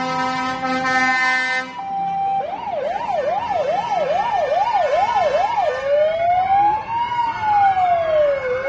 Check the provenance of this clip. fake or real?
real